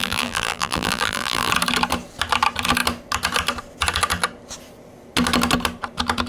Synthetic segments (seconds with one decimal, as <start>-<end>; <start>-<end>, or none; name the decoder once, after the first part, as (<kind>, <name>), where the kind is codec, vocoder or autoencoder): 0.0-1.5 (vocoder, BigVGAN v2)